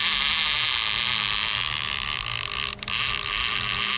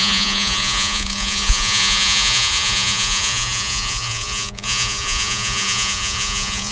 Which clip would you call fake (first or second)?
second